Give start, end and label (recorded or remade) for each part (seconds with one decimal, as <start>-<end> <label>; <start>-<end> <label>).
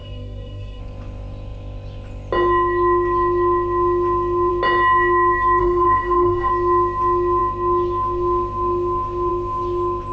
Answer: 0.0-0.8 remade; 0.8-5.6 recorded; 5.6-6.5 remade; 6.5-10.1 recorded